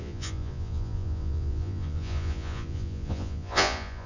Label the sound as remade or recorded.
remade